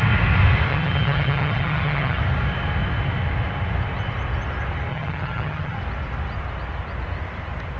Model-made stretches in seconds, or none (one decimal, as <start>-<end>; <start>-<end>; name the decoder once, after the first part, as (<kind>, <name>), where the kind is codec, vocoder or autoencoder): 0.7-2.2 (vocoder, HiFi-GAN); 4.9-5.8